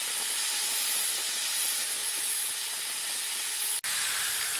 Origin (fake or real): real